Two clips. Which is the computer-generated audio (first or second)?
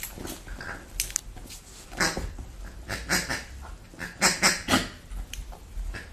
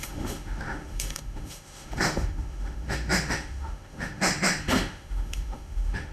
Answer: second